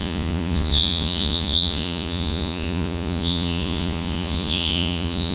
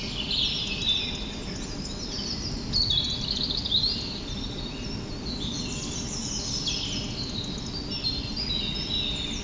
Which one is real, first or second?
second